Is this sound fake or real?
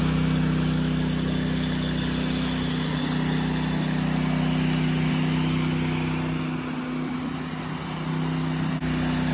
real